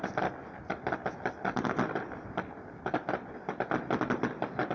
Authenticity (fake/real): real